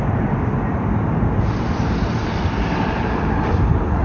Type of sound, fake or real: fake